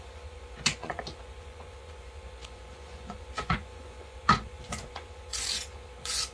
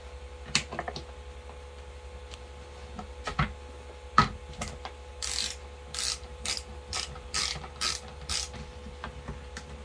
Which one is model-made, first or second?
first